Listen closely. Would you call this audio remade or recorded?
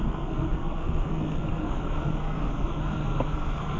remade